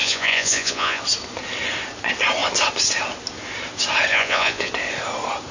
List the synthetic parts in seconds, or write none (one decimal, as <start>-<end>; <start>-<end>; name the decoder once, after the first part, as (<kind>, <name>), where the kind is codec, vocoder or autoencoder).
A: 0.0-1.0 (vocoder, Vocos); 4.1-4.7